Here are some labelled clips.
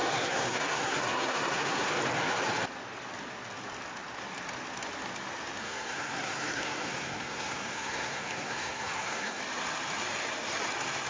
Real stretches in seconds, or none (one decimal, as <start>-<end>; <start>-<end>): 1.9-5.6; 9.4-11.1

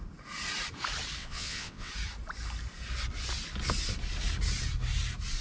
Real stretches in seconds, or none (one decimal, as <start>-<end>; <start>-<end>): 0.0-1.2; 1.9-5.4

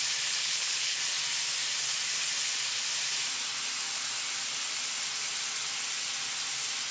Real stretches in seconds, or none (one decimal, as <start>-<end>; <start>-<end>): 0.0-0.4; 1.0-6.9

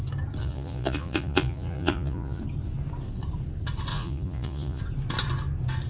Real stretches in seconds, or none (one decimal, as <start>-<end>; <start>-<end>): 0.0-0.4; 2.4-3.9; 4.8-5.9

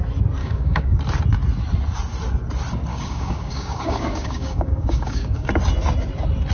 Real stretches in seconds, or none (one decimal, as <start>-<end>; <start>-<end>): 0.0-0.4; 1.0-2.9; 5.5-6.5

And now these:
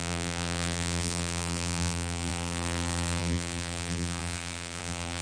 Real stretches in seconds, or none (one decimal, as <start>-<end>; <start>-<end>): none

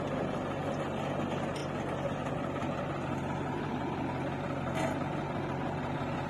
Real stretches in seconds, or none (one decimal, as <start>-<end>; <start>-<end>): 0.0-6.3

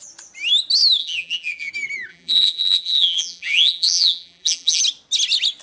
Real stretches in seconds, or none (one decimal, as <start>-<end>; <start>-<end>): 0.0-1.0; 1.7-2.1; 4.8-5.6